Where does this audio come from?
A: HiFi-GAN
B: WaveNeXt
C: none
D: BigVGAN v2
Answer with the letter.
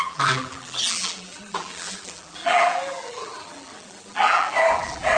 D